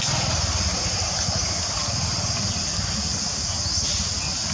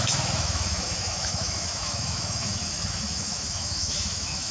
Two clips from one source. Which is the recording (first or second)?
first